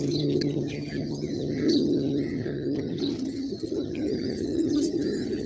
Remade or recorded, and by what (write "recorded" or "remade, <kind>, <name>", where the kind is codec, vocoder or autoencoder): remade, vocoder, HiFi-GAN